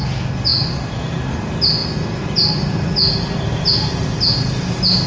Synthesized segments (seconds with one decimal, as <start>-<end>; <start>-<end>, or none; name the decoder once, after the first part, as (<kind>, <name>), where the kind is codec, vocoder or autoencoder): none